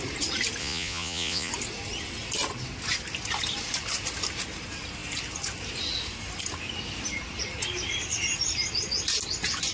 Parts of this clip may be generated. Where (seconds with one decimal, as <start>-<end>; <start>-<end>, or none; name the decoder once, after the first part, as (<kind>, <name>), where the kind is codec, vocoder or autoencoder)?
0.6-1.5 (vocoder, Vocos)